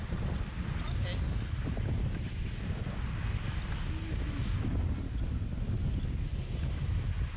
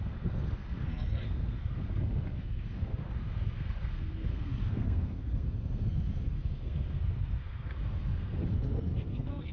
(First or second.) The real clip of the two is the first